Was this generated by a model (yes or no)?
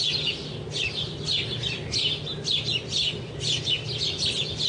no